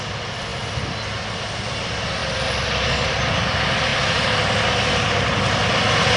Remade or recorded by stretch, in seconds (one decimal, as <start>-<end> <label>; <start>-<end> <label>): 0.0-6.2 recorded